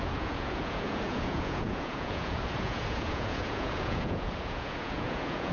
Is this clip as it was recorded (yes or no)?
no